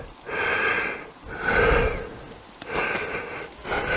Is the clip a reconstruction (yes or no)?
no